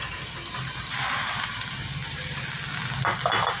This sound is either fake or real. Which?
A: real